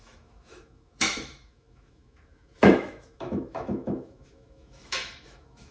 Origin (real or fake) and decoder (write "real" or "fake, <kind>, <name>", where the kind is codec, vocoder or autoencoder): fake, autoencoder, DAC-VAE